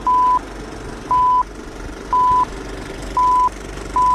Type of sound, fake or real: real